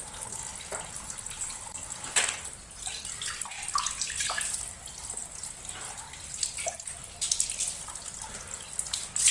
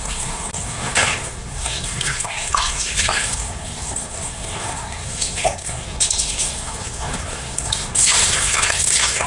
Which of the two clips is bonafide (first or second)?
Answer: first